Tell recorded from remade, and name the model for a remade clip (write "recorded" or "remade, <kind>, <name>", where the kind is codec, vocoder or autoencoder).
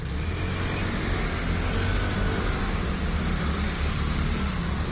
recorded